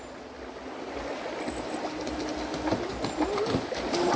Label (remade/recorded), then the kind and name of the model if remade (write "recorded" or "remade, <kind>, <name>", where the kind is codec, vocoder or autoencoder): recorded